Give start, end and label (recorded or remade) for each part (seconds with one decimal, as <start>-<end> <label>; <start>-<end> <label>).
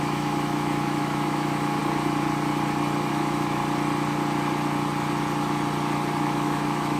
0.0-1.8 remade; 1.8-3.1 recorded; 3.1-3.6 remade; 3.6-6.2 recorded; 6.2-7.0 remade